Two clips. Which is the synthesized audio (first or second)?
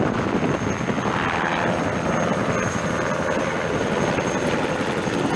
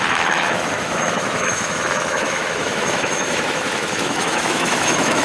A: second